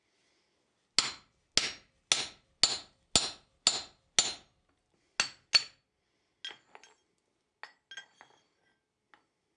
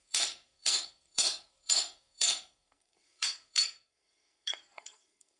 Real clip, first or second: first